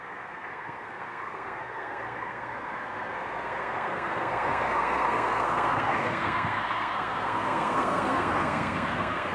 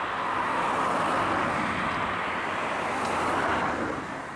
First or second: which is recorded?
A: second